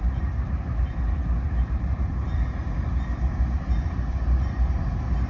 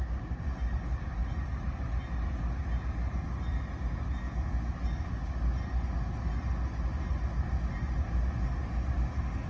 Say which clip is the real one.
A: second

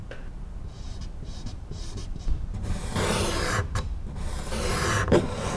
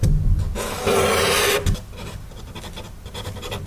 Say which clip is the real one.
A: second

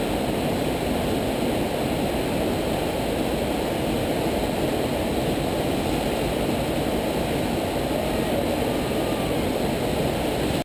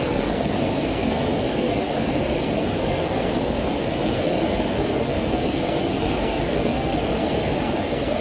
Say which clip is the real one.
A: first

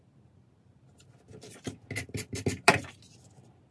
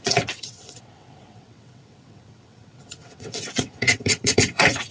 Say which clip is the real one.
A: first